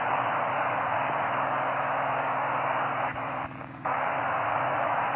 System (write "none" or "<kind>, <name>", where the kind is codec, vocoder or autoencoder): codec, DAC